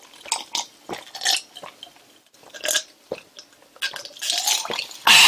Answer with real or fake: real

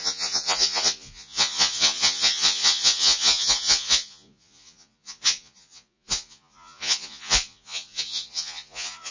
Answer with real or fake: fake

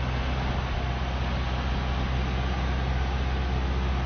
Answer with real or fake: real